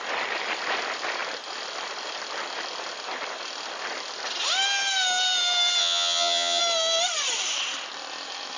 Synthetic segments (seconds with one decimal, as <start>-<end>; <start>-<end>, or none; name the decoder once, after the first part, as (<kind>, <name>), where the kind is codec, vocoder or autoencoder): 5.8-6.6 (vocoder, HiFi-GAN)